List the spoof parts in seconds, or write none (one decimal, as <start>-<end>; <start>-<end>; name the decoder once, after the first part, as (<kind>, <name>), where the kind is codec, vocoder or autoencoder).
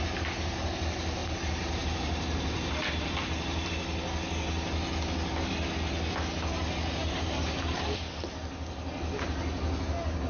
1.2-3.7 (vocoder, BigVGAN v2); 7.0-8.0